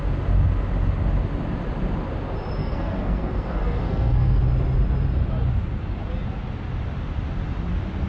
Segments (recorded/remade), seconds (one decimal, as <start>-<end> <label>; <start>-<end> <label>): 0.0-2.6 recorded; 2.6-4.4 remade; 4.4-8.1 recorded